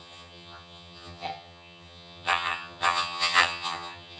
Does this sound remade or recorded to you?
remade